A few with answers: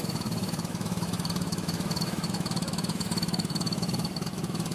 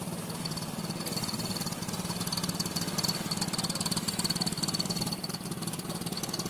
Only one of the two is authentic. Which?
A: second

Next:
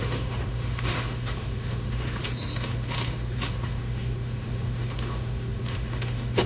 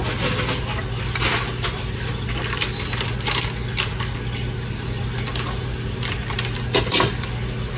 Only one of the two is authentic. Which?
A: second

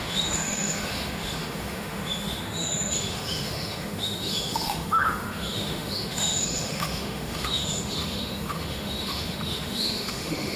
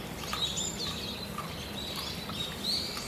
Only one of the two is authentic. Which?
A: second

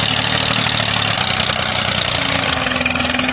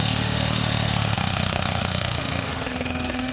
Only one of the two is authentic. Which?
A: first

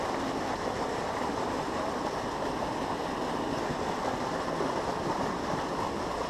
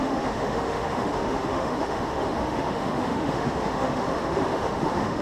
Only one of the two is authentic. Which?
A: first